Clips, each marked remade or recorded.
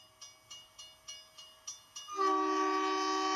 recorded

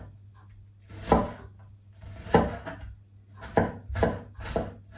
recorded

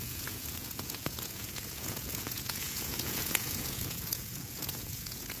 remade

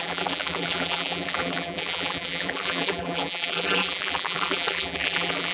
remade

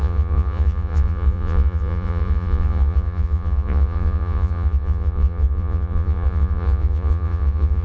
remade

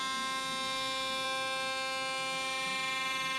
recorded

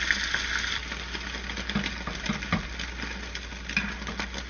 recorded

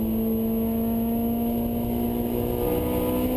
recorded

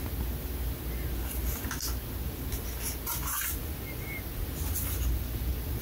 recorded